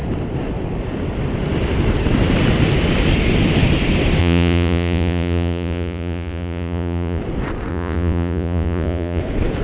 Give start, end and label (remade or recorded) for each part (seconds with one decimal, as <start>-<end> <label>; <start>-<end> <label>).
0.0-4.2 recorded; 4.2-7.2 remade; 7.2-7.7 recorded; 7.7-9.2 remade; 9.2-9.6 recorded